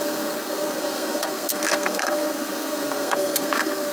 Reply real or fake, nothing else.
fake